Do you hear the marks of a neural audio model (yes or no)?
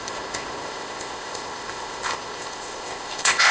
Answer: yes